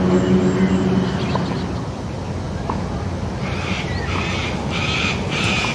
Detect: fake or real real